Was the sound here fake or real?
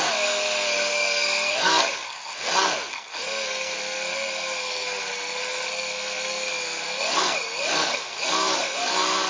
fake